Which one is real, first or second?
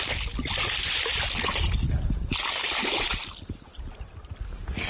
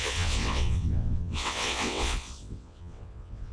first